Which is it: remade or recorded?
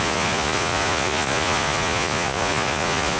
remade